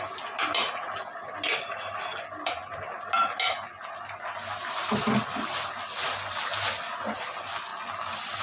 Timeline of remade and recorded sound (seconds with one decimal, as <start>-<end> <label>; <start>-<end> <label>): 0.0-8.4 recorded